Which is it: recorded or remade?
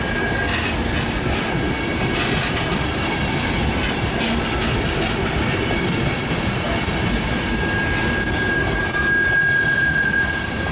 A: recorded